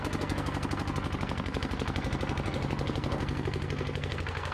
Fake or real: fake